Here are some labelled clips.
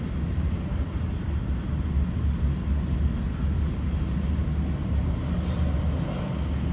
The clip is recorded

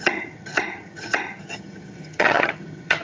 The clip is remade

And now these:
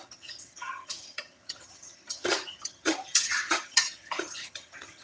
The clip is remade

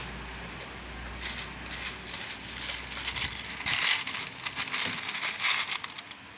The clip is recorded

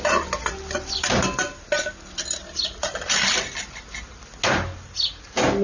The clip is recorded